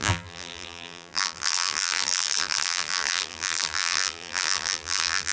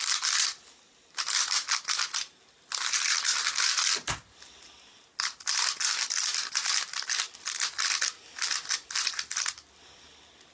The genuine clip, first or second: second